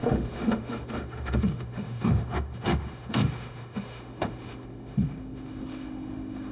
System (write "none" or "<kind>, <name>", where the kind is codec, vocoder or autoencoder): autoencoder, DAC-VAE